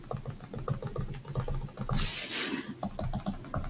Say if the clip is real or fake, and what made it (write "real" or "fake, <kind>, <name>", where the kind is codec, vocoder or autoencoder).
real